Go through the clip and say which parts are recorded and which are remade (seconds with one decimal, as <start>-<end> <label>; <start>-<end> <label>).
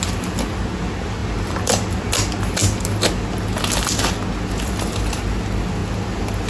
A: 0.0-1.2 recorded; 1.2-2.0 remade; 2.0-6.5 recorded